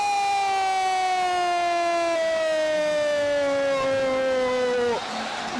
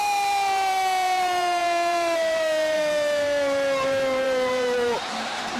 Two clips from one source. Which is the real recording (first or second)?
first